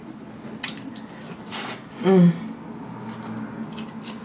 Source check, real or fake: real